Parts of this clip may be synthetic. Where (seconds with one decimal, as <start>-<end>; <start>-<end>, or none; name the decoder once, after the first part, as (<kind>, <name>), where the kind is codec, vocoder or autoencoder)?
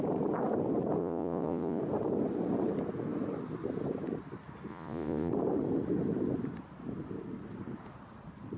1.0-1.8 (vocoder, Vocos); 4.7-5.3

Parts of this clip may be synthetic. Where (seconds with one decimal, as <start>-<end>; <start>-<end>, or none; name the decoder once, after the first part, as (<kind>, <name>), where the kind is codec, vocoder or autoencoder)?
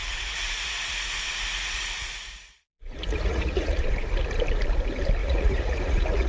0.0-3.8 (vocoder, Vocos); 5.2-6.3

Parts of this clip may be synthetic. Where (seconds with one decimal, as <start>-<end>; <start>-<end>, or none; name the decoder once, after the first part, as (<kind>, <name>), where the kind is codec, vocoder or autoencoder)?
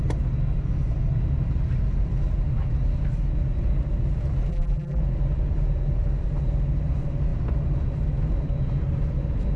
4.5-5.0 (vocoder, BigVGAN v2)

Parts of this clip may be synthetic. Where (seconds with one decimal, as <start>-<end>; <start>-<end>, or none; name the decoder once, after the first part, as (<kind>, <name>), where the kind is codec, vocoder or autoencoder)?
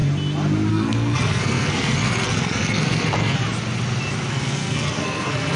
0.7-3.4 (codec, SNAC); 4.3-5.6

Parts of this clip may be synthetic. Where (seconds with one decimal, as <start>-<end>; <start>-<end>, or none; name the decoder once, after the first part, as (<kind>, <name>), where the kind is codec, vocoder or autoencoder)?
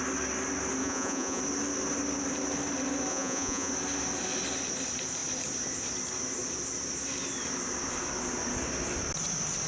0.8-1.4 (vocoder, Vocos); 3.1-3.7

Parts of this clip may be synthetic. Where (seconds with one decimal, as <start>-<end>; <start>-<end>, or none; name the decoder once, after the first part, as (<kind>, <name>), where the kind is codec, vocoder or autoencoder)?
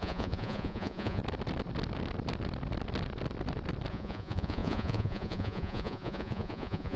0.0-1.2 (vocoder, Vocos); 3.9-7.0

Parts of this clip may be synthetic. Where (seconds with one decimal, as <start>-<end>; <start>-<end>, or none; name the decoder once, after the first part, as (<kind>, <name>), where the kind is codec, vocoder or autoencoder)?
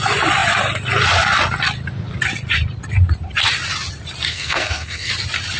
4.3-5.1 (codec, SNAC)